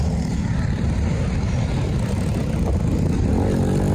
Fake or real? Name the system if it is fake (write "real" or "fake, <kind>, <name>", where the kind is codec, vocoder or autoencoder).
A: real